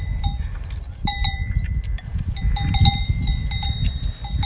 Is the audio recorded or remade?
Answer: remade